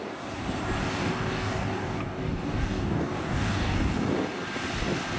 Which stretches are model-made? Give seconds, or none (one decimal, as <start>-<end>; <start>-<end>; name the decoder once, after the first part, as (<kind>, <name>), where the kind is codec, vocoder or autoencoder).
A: 0.8-3.9 (codec, DAC)